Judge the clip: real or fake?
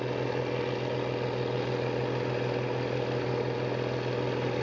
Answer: real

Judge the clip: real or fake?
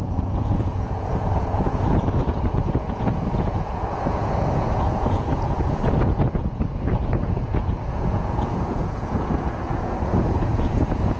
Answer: fake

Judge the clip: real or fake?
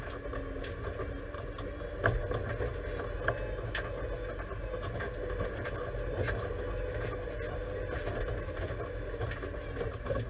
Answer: real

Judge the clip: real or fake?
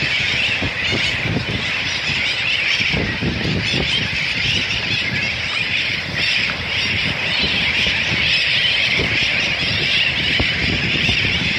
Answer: fake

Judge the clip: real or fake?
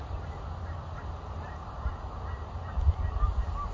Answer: real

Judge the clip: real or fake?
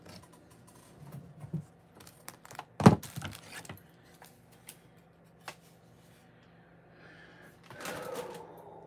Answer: real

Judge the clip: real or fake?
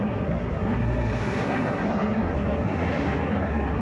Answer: fake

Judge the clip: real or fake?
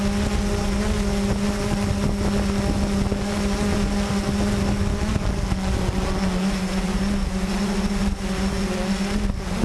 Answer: real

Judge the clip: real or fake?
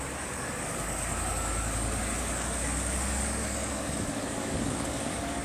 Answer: fake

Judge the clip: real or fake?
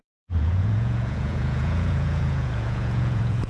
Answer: fake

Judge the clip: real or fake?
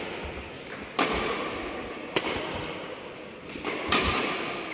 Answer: real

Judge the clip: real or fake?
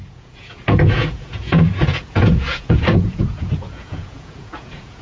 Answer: fake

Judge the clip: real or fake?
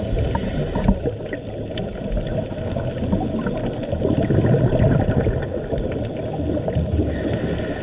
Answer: real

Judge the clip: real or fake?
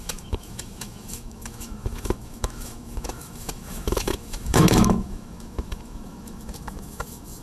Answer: fake